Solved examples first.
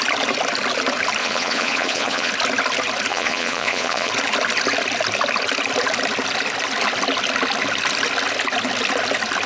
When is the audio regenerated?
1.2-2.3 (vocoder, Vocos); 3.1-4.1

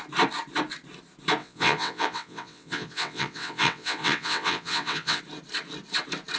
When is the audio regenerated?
1.4-5.2 (vocoder, WaveNeXt)

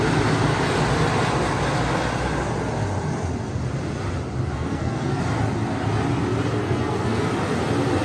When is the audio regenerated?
4.5-5.2 (codec, SNAC); 6.6-7.3

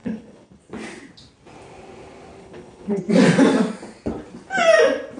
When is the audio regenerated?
0.0-0.6 (codec, HILCodec); 2.4-3.0

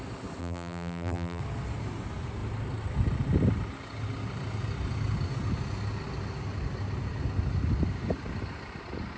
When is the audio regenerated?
0.4-1.4 (vocoder, BigVGAN v2)

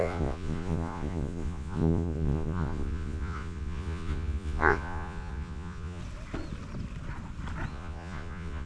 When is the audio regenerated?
0.0-6.0 (vocoder, Vocos); 7.7-8.7